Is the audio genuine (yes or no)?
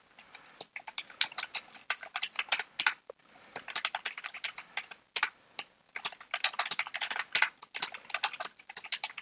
yes